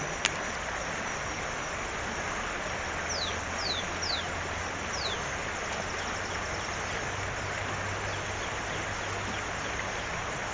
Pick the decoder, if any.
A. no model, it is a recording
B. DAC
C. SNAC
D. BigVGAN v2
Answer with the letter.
A